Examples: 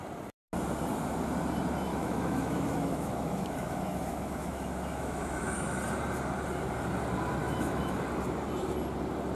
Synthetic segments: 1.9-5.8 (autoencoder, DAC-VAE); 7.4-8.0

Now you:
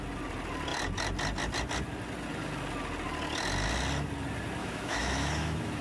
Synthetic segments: 4.6-5.8 (autoencoder, DAC-VAE)

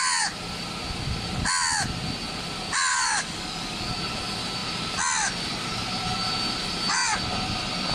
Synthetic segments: 2.9-3.9 (codec, DAC)

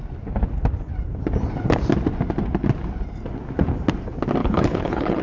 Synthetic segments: 4.4-5.2 (codec, HILCodec)

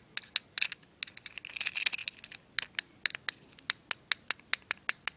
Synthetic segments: none

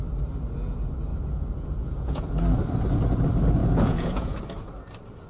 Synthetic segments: 1.1-2.4 (vocoder, Vocos); 3.6-4.4